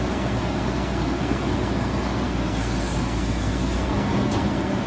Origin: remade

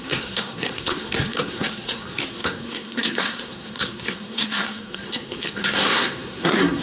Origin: remade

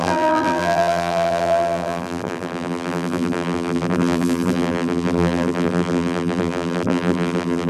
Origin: remade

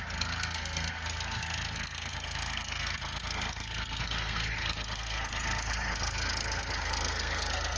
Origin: remade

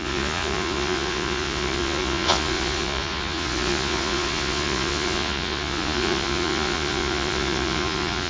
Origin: remade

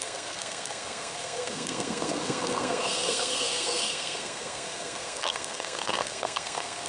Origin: remade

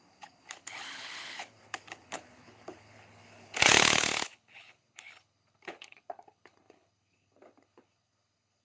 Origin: remade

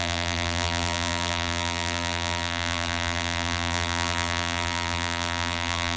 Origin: remade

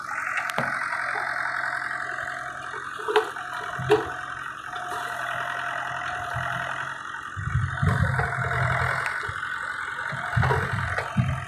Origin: recorded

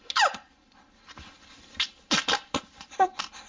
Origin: recorded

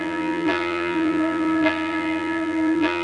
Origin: remade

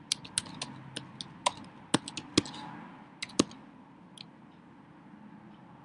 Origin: recorded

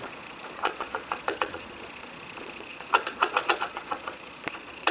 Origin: remade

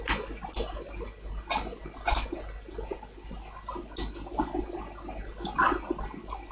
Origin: recorded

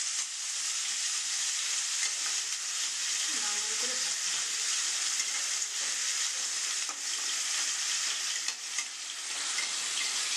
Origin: recorded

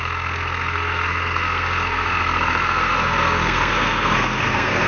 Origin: remade